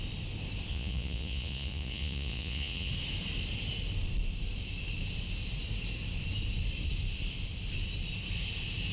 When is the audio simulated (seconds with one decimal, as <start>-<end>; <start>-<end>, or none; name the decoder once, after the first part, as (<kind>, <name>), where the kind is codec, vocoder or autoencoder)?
0.7-2.9 (vocoder, Vocos)